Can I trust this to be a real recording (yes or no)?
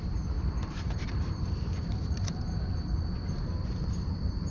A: no